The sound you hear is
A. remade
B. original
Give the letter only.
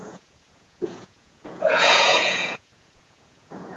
A